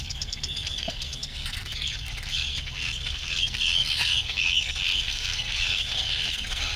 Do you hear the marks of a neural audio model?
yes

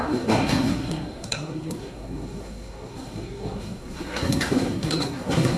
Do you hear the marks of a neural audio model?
yes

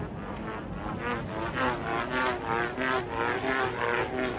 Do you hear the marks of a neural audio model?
no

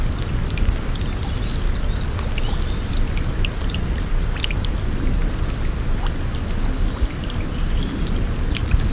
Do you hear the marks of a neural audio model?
no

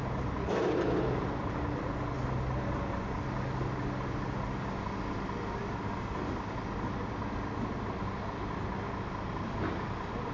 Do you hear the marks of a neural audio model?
no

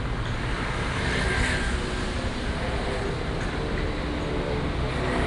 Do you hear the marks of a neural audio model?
no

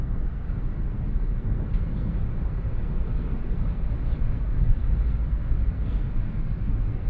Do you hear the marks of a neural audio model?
yes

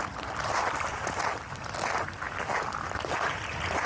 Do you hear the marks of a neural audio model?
no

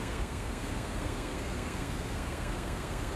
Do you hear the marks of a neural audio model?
yes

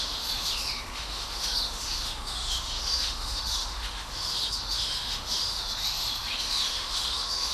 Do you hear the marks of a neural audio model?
yes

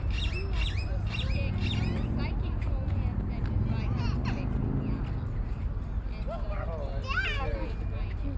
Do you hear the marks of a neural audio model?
no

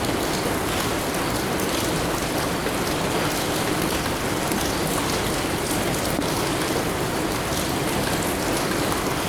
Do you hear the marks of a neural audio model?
no